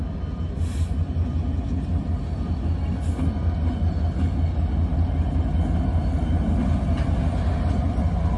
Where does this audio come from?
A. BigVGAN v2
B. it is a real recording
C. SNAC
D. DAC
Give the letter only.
B